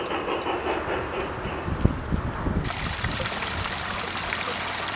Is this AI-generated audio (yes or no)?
yes